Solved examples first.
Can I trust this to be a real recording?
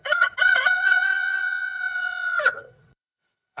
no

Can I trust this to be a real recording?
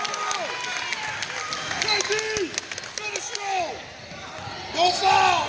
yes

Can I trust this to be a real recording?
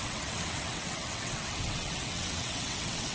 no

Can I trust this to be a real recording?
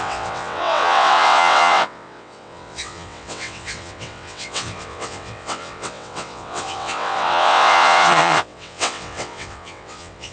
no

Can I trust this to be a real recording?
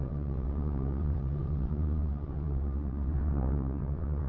no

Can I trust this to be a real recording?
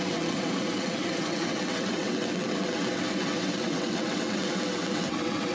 no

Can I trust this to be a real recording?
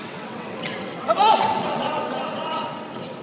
no